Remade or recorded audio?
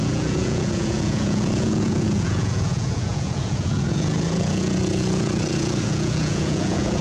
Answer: remade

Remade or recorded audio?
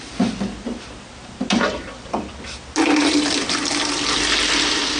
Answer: recorded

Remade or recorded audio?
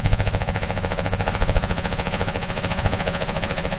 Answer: remade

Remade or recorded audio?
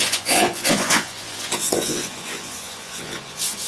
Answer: remade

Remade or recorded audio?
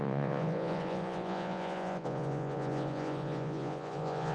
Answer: remade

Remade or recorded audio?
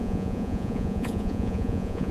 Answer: remade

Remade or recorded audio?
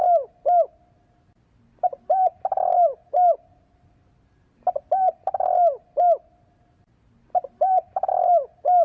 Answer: recorded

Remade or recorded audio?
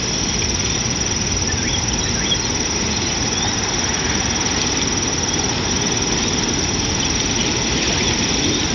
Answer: recorded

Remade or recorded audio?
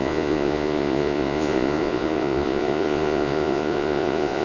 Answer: remade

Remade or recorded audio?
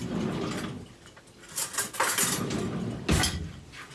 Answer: recorded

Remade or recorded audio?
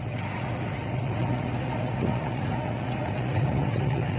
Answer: remade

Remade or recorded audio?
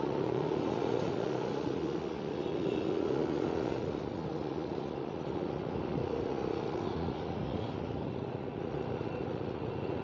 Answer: remade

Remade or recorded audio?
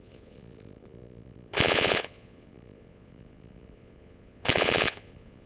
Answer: remade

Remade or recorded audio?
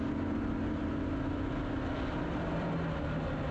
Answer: recorded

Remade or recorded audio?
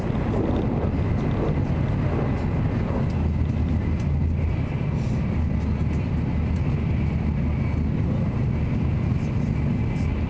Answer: recorded